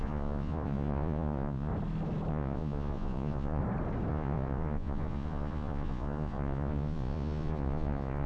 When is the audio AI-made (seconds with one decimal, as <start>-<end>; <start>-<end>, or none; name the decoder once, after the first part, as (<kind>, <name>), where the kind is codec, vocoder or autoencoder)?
0.0-1.7 (vocoder, Vocos); 2.3-3.6; 4.1-8.3